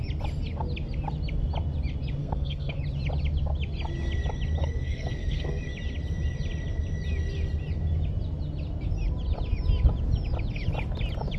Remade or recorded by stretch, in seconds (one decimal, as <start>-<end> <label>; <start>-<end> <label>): 0.0-2.2 recorded; 2.2-2.8 remade; 2.8-4.6 recorded; 4.6-5.6 remade; 5.6-11.4 recorded